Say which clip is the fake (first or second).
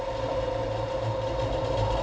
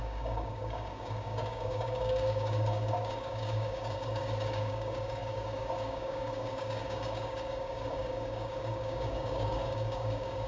second